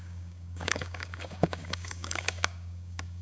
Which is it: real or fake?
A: fake